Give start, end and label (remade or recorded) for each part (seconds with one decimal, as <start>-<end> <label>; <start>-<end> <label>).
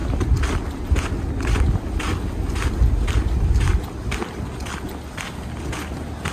0.0-6.3 recorded